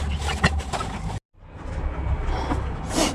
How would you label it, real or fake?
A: real